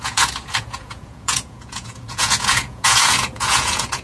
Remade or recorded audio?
remade